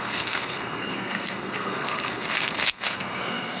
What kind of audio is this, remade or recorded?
remade